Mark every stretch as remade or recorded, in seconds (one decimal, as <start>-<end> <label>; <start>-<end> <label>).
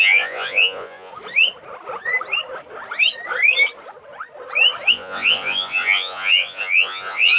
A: 0.0-1.1 remade; 1.1-4.9 recorded; 4.9-7.4 remade